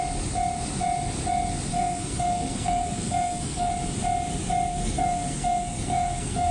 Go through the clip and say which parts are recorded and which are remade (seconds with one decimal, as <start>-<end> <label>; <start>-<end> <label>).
0.0-1.7 recorded; 1.7-3.7 remade; 3.7-4.7 recorded; 4.7-6.5 remade